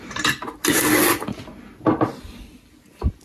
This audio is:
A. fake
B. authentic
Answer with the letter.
B